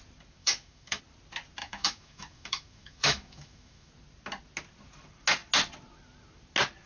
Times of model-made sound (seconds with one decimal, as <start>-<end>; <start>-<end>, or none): 0.4-1.0; 1.6-3.9